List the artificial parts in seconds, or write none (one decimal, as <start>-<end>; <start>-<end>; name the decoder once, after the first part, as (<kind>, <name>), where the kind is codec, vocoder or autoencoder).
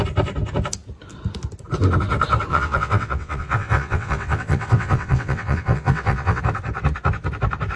2.5-6.4 (vocoder, WaveNeXt)